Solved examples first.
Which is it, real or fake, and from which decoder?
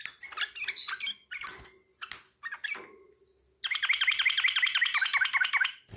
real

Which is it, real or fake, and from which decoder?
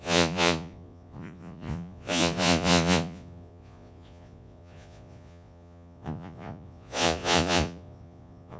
fake, vocoder, Vocos